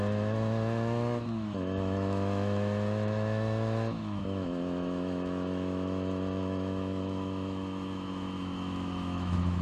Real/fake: fake